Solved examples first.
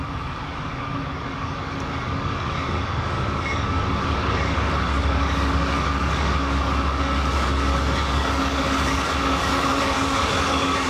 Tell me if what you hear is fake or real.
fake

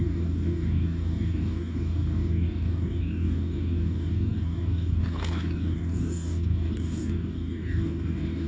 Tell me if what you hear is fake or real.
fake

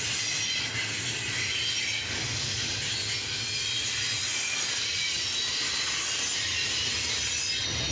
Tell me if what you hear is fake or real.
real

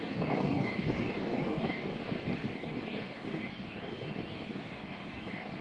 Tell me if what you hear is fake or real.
fake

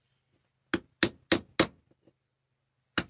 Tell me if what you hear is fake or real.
real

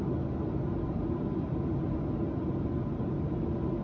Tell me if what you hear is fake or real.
real